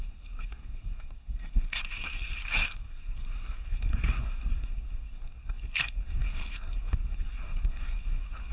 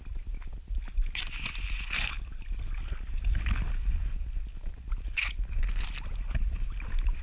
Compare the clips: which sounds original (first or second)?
second